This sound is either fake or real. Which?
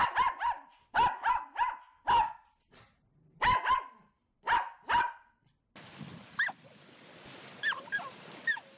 real